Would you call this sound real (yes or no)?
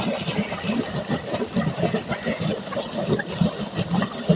yes